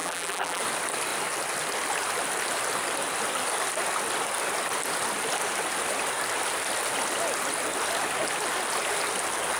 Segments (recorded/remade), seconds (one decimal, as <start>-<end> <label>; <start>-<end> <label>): 0.0-0.6 remade; 0.6-9.6 recorded